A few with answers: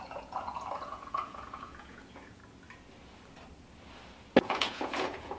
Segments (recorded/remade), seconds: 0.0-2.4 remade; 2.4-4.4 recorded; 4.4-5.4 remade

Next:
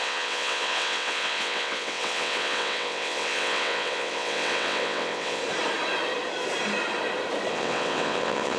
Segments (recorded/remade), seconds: 0.0-5.4 remade; 5.4-7.5 recorded; 7.5-8.6 remade

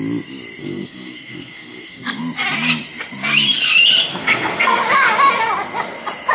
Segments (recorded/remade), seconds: 0.0-0.6 recorded; 0.6-2.2 remade; 2.2-4.1 recorded; 4.1-4.8 remade; 4.8-6.3 recorded

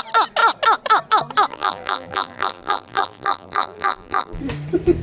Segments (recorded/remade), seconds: 0.0-1.5 recorded; 1.5-4.4 remade; 4.4-5.0 recorded

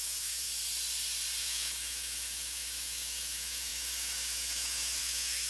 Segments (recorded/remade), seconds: 0.0-0.5 remade; 0.5-1.4 recorded; 1.4-5.5 remade